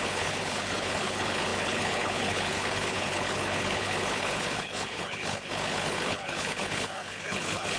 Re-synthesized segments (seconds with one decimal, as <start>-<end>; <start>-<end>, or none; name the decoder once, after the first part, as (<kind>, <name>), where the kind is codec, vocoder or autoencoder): 0.0-7.8 (codec, HILCodec)